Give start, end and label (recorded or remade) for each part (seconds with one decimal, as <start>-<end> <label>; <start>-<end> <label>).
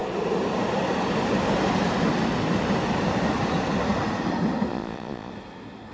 0.0-4.7 recorded; 4.7-5.3 remade; 5.3-5.9 recorded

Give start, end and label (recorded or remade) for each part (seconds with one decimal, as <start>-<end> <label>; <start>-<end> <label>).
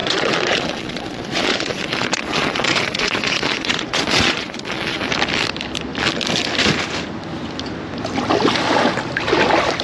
0.0-5.1 remade; 5.1-9.8 recorded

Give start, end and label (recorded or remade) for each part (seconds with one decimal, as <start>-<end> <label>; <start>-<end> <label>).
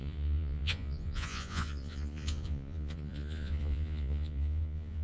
0.0-5.0 remade